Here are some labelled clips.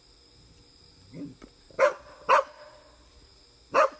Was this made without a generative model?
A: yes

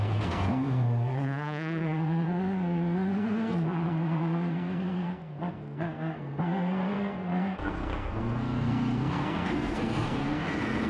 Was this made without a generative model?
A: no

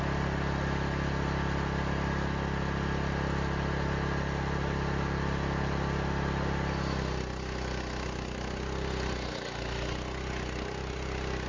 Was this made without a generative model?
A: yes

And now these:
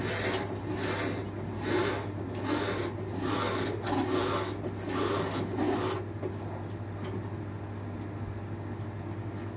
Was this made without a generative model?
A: yes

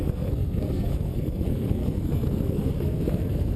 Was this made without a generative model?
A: no